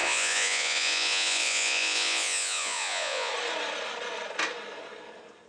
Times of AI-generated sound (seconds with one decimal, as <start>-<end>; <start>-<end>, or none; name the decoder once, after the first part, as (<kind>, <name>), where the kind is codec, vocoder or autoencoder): 0.0-3.3 (vocoder, Vocos)